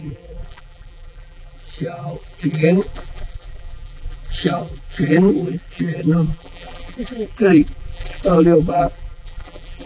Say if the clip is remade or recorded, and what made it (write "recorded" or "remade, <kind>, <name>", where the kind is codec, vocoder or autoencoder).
remade, vocoder, BigVGAN v2